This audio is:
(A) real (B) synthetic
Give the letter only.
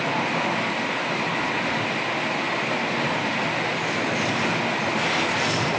A